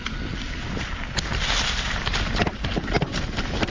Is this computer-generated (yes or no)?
no